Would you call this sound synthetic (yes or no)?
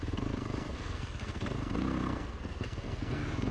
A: yes